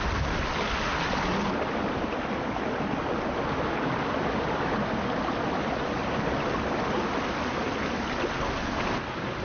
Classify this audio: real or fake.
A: real